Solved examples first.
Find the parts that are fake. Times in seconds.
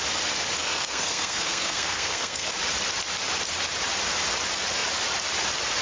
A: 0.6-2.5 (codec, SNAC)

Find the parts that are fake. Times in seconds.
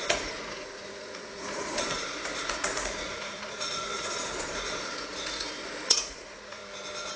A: 0.0-6.6 (vocoder, Vocos)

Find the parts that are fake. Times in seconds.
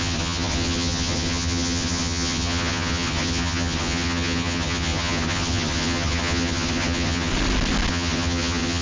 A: 0.0-7.3 (vocoder, HiFi-GAN); 7.9-8.8